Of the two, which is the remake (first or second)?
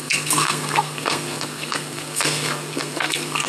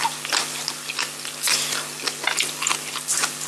first